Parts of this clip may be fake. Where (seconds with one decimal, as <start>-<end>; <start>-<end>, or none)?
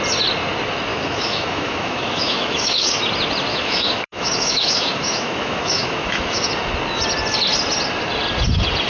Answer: 0.9-3.0; 3.5-6.5